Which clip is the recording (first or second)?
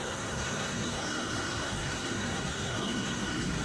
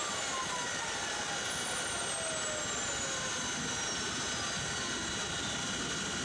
second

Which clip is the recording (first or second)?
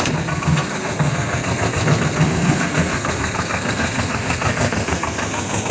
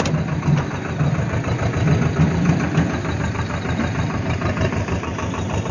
second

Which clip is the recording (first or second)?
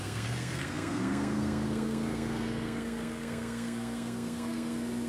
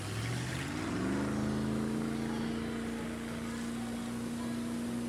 second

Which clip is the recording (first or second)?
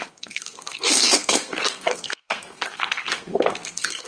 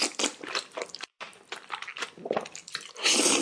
second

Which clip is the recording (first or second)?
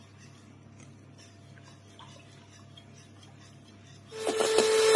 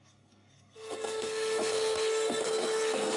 first